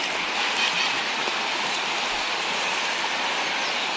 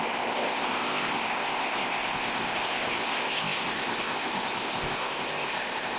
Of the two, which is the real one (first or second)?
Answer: first